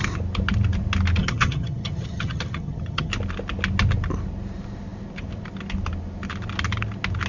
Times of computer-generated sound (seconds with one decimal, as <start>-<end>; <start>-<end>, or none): 1.2-3.1